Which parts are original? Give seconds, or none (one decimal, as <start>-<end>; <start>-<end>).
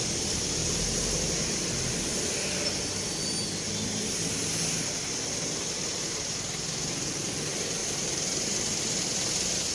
0.0-0.6; 1.9-7.8; 8.7-9.7